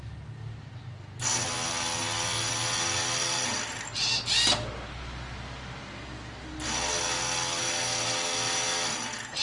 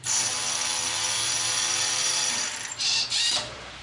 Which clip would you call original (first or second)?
first